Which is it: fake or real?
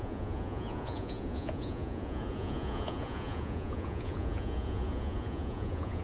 fake